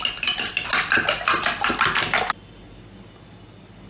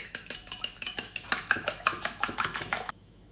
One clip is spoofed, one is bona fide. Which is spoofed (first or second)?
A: second